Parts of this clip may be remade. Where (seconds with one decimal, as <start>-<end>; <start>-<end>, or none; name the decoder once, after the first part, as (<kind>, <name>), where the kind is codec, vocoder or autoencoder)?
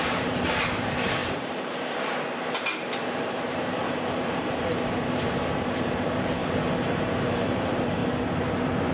0.0-6.4 (vocoder, BigVGAN v2); 7.1-8.0